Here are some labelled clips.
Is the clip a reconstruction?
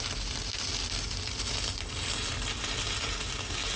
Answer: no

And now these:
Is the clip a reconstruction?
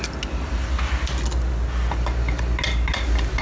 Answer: no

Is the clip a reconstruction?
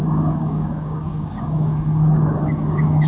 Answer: yes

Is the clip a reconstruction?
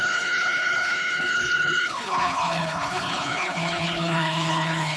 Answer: yes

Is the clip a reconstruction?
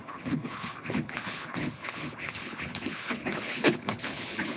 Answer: yes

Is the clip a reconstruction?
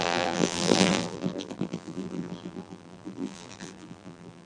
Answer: yes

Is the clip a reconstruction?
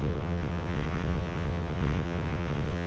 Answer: yes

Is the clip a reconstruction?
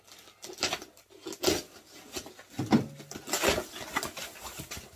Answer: no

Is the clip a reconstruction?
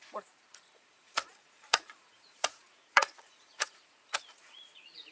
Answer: yes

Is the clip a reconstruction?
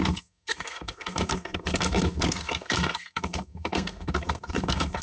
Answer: yes